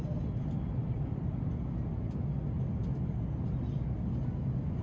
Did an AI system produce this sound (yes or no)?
no